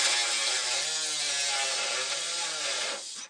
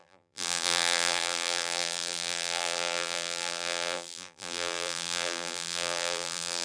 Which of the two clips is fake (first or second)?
second